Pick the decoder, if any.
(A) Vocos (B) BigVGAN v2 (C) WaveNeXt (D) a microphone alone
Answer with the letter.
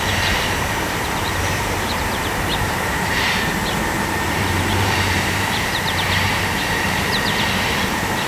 B